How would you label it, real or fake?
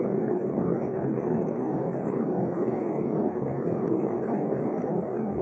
fake